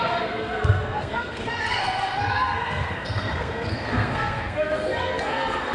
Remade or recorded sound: remade